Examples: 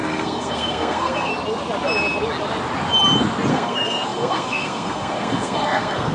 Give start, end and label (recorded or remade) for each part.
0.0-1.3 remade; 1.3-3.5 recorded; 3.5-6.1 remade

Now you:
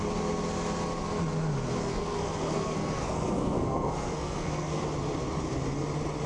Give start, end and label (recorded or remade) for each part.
0.0-1.8 recorded; 1.8-4.8 remade; 4.8-6.3 recorded

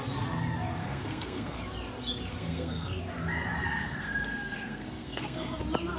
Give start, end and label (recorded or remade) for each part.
0.0-0.8 recorded; 0.8-1.6 remade; 1.6-2.3 recorded; 2.3-3.0 remade; 3.0-3.6 recorded; 3.6-5.6 remade; 5.6-6.0 recorded